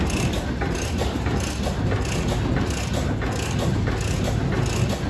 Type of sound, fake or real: real